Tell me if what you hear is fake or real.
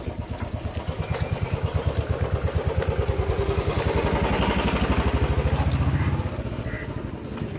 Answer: real